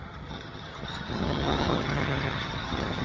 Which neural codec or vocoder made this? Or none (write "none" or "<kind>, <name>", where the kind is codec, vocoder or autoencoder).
vocoder, HiFi-GAN